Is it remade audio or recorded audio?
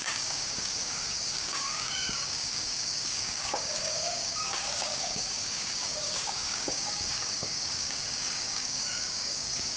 remade